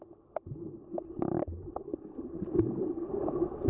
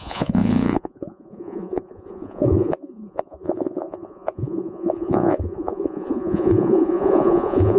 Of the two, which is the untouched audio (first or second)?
first